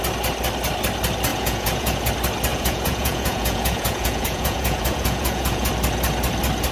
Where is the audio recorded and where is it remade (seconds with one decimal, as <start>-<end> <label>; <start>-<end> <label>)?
0.0-1.3 recorded; 1.3-2.1 remade; 2.1-2.5 recorded; 2.5-5.7 remade; 5.7-6.7 recorded